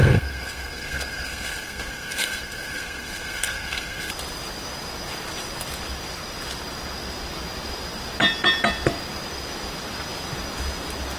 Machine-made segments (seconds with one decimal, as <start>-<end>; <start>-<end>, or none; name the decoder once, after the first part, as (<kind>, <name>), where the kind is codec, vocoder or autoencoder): 0.0-4.1 (codec, SNAC)